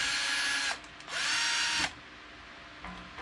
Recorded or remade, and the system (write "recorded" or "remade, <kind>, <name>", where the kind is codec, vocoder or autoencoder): recorded